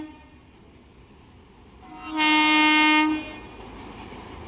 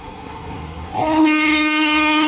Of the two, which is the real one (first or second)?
first